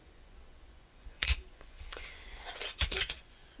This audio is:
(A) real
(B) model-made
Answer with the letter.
B